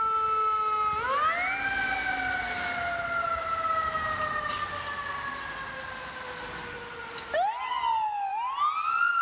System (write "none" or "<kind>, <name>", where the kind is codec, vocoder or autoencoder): none